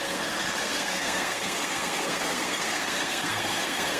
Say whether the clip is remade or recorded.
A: remade